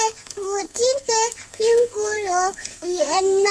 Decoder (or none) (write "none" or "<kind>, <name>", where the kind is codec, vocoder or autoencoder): codec, SNAC